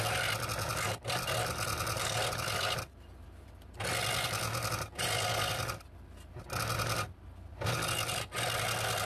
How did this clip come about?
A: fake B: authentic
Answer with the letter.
B